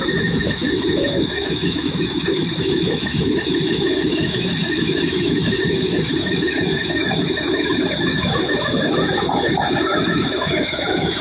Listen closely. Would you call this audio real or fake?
fake